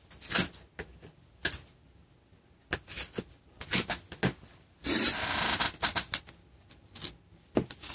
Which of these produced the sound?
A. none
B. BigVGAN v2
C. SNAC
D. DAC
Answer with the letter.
A